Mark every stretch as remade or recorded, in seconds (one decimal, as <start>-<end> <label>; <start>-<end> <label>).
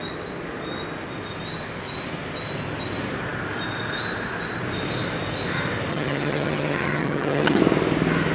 0.0-5.9 recorded; 5.9-7.6 remade; 7.6-8.3 recorded